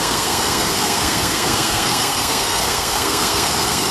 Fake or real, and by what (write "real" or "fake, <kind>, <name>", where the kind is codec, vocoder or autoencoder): fake, codec, SNAC